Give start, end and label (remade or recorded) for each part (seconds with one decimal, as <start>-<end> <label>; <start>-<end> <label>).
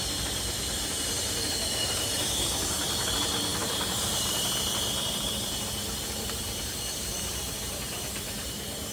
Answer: 0.0-8.9 remade